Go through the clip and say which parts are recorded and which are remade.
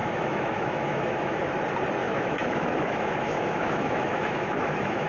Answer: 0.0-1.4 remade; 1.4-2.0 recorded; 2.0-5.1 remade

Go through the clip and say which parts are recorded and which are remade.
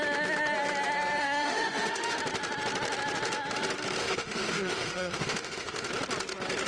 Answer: 0.0-1.2 recorded; 1.2-2.2 remade; 2.2-4.0 recorded; 4.0-5.9 remade; 5.9-6.7 recorded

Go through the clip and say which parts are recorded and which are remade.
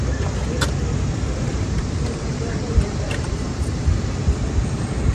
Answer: 0.0-1.5 recorded; 1.5-3.7 remade; 3.7-5.1 recorded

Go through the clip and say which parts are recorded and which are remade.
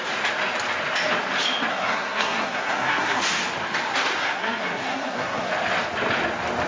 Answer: 0.0-1.7 recorded; 1.7-3.2 remade; 3.2-4.2 recorded; 4.2-5.5 remade; 5.5-6.7 recorded